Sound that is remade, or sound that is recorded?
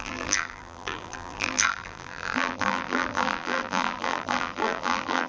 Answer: remade